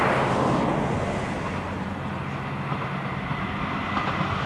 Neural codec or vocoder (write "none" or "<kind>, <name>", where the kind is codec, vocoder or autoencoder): none